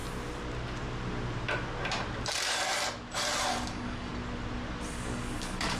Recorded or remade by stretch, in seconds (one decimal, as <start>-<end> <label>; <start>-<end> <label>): 0.0-3.5 recorded; 3.5-4.1 remade; 4.1-4.9 recorded; 4.9-5.8 remade